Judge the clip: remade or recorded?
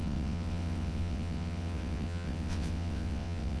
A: remade